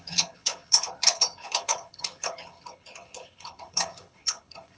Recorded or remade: remade